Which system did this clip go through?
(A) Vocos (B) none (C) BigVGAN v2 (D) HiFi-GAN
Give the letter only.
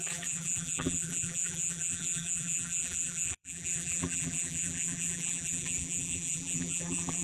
C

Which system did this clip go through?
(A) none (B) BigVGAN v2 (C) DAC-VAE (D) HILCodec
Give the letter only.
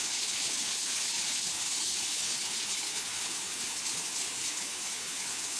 D